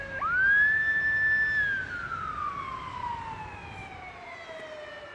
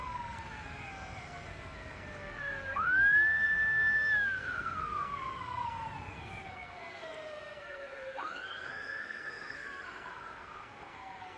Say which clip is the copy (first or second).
second